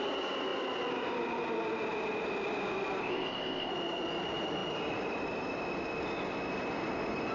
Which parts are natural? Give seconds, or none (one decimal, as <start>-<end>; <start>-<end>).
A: 0.0-3.0; 3.7-7.3